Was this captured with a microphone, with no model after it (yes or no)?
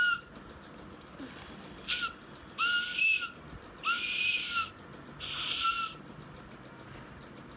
yes